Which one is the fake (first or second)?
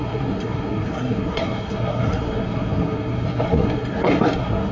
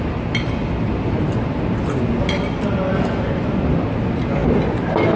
first